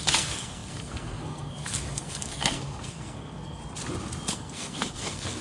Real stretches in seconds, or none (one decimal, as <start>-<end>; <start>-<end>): 3.6-4.3